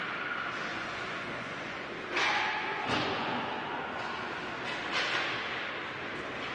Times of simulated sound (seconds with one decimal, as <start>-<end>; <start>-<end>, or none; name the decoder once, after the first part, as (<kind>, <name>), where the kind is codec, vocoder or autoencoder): 0.7-4.3 (vocoder, Vocos)